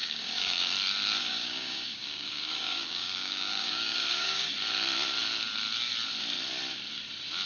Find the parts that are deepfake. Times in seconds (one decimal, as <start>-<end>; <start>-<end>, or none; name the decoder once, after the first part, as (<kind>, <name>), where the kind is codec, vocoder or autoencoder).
0.0-0.7 (codec, DAC); 1.2-4.5